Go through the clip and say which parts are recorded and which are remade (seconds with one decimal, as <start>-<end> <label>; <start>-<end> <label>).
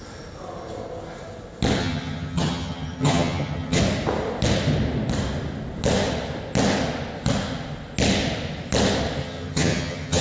0.0-1.8 recorded; 1.8-3.8 remade; 3.8-9.2 recorded; 9.2-10.2 remade